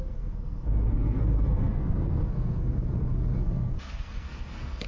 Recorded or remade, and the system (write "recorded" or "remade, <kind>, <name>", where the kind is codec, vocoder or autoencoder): remade, codec, SNAC